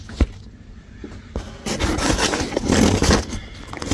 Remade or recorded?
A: recorded